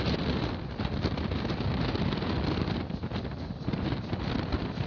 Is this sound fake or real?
real